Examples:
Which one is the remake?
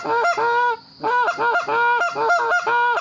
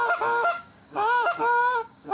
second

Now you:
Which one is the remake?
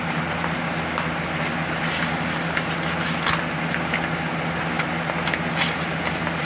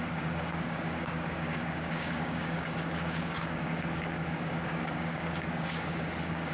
second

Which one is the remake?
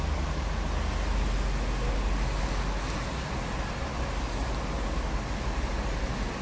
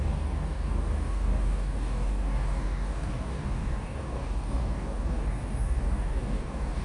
second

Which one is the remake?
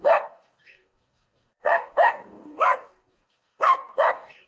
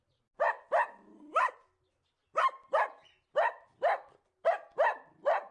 first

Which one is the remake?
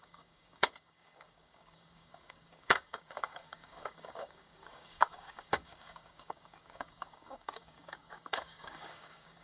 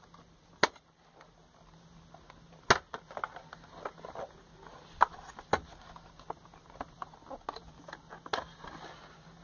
first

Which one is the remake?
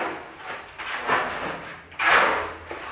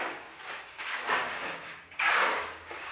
second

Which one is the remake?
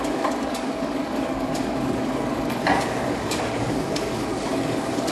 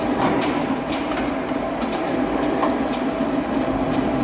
first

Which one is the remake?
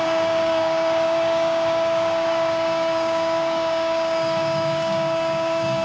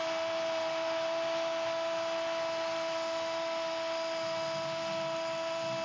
first